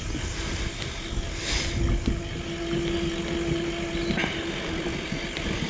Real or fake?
real